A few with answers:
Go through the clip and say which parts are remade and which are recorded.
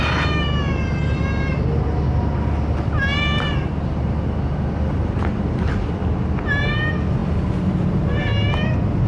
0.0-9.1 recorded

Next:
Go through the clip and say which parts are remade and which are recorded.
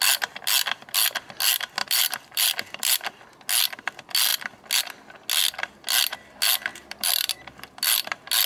0.0-1.8 recorded; 1.8-3.1 remade; 3.1-6.7 recorded; 6.7-7.3 remade; 7.3-8.5 recorded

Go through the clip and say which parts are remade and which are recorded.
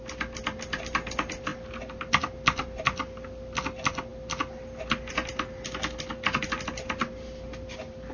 0.0-8.1 recorded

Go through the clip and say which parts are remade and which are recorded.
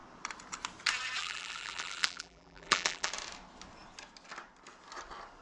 0.0-1.2 recorded; 1.2-3.1 remade; 3.1-5.4 recorded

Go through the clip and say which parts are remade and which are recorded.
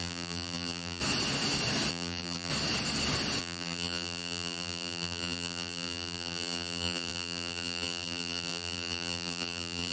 0.0-1.0 remade; 1.0-1.9 recorded; 1.9-2.5 remade; 2.5-3.4 recorded; 3.4-9.9 remade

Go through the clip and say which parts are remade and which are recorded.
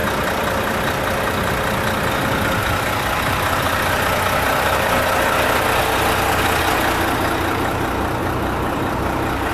0.0-2.6 recorded; 2.6-6.6 remade; 6.6-8.2 recorded; 8.2-9.5 remade